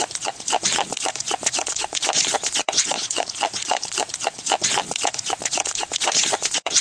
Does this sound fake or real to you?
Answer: fake